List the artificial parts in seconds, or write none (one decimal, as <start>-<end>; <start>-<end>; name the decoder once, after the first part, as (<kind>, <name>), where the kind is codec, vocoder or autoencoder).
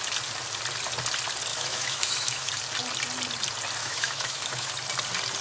1.5-2.5 (autoencoder, DAC-VAE); 3.8-4.7